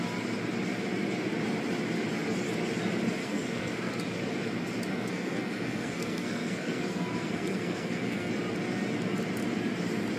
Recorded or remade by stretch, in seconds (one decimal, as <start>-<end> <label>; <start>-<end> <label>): 0.0-3.2 recorded; 3.2-3.9 remade; 3.9-4.9 recorded; 4.9-8.3 remade; 8.3-10.2 recorded